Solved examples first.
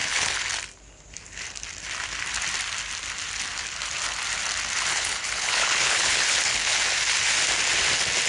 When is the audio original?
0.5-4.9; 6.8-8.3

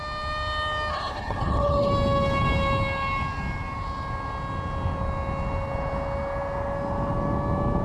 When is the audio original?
0.0-0.9; 1.9-7.8

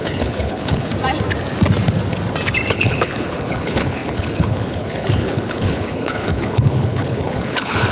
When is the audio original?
0.9-2.7

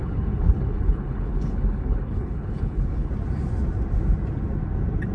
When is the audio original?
3.1-5.1

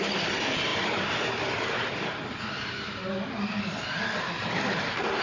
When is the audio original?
0.0-5.2

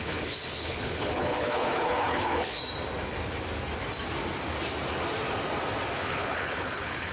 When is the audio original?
2.6-6.0

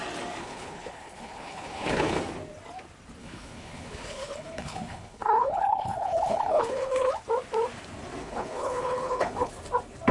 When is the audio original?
0.0-0.4; 2.2-3.2; 7.1-8.2; 9.5-10.1

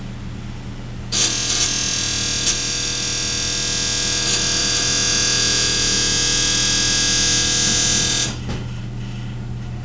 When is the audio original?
0.0-9.8